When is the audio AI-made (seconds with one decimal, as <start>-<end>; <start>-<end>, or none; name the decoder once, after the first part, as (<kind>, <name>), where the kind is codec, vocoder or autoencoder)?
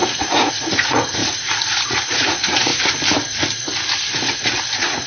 0.0-2.7 (vocoder, Vocos); 4.1-5.1